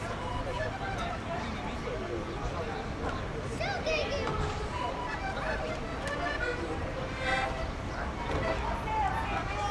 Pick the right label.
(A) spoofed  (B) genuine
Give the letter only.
B